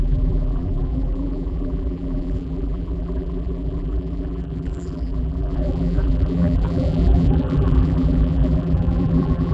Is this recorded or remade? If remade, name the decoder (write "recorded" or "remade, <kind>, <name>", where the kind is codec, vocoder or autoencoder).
remade, vocoder, BigVGAN v2